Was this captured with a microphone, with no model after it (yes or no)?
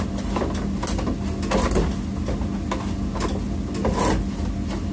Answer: yes